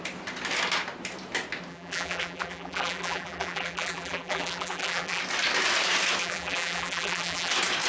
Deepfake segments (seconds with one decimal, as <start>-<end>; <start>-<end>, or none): 1.7-5.2; 6.2-7.5